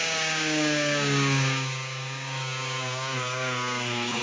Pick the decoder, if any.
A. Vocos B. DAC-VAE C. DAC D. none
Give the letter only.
C